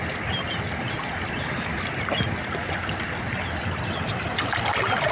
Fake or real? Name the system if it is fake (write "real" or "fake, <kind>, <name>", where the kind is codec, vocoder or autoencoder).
real